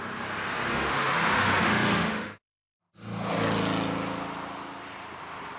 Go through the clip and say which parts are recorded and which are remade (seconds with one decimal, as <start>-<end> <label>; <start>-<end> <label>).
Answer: 0.0-0.7 recorded; 0.7-2.8 remade; 2.8-5.6 recorded